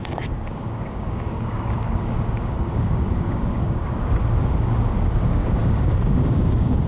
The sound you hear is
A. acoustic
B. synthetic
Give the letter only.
B